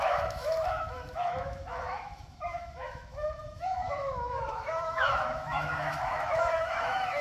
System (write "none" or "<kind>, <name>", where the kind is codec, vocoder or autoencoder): autoencoder, DAC-VAE